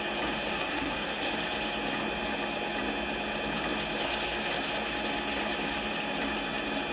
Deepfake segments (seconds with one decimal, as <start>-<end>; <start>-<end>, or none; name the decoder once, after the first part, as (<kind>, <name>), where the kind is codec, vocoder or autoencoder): 0.5-1.3 (codec, SNAC)